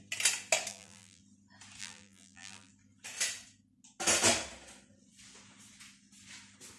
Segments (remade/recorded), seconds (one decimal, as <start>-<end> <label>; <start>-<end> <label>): 0.0-0.7 recorded; 0.7-1.2 remade; 1.2-1.8 recorded; 1.8-2.7 remade; 2.7-6.8 recorded